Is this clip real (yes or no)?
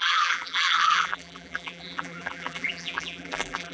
no